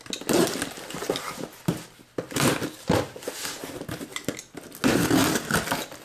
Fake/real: real